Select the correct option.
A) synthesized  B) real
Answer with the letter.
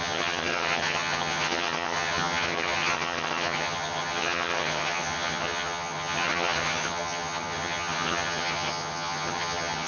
A